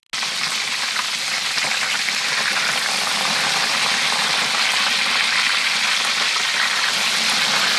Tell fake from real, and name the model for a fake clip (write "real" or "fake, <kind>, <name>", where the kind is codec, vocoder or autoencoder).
real